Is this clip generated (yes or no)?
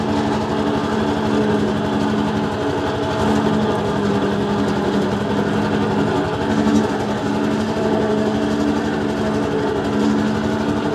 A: no